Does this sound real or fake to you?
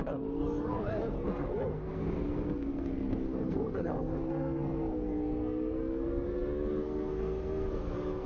fake